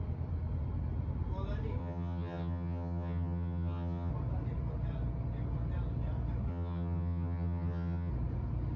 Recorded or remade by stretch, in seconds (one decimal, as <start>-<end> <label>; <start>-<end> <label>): 0.0-1.8 recorded; 1.8-4.1 remade; 4.1-6.5 recorded; 6.5-8.1 remade; 8.1-8.8 recorded